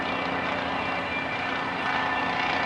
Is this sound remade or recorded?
recorded